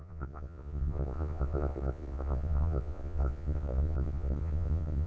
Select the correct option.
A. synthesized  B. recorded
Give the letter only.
A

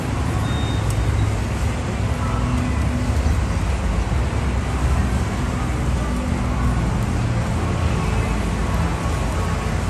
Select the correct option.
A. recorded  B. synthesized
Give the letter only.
A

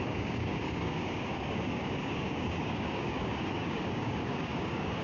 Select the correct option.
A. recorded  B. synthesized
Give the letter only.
B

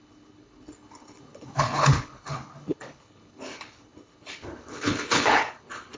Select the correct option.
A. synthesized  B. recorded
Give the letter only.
A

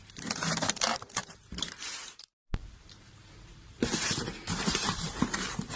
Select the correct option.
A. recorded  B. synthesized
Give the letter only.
B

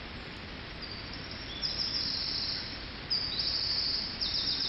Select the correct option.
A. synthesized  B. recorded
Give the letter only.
B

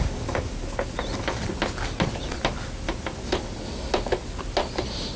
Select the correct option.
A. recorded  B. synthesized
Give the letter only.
A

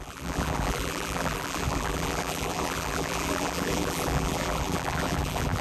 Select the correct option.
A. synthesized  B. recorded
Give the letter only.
A